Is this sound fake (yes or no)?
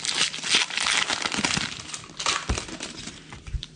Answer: no